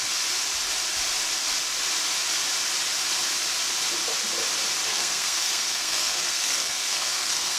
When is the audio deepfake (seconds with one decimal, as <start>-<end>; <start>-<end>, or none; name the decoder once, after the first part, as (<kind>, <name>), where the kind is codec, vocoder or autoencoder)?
4.9-7.6 (codec, SNAC)